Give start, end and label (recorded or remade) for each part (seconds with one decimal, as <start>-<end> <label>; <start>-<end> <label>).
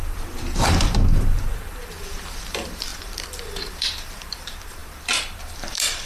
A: 0.0-6.1 remade